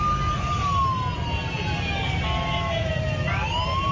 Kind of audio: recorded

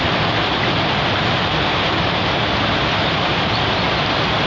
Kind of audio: recorded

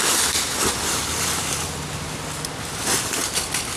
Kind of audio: recorded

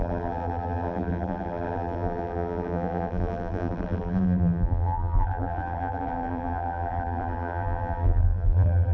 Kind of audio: remade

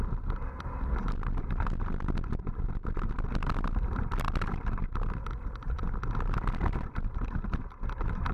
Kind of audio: recorded